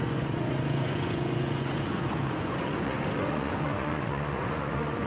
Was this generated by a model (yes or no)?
yes